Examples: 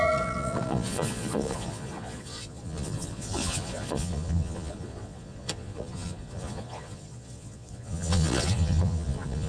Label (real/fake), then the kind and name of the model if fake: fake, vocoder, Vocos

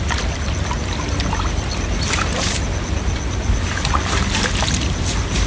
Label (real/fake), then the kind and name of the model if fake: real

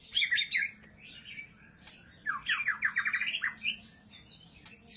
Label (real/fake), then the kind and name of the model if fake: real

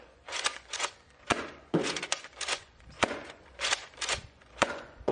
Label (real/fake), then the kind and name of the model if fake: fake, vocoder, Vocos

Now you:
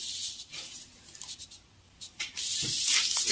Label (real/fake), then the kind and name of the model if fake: real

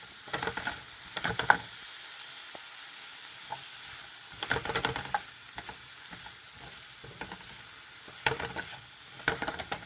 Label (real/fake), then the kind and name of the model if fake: real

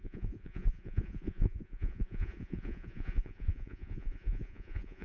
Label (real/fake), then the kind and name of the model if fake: fake, vocoder, Vocos